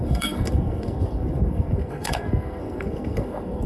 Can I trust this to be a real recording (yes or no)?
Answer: no